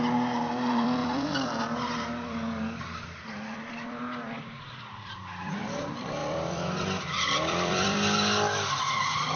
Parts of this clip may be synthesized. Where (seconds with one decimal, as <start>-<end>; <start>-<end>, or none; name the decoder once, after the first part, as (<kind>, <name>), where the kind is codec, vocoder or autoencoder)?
0.0-9.4 (vocoder, BigVGAN v2)